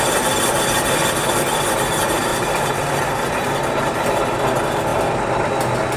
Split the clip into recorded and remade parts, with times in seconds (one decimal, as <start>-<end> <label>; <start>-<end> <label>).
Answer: 0.0-2.3 recorded; 2.3-3.0 remade; 3.0-6.0 recorded